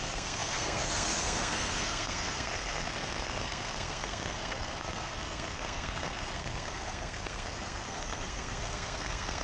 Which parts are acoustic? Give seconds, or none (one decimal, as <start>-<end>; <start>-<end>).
none